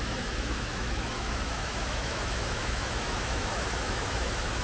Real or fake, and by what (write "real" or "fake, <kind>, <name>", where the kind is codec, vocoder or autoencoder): fake, autoencoder, DAC-VAE